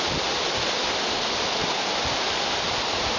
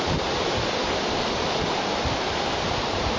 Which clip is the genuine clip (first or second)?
first